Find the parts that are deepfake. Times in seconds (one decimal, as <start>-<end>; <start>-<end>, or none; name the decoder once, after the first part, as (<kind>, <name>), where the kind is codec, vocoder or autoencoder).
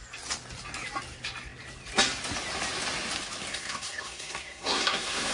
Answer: 3.5-5.3 (codec, SNAC)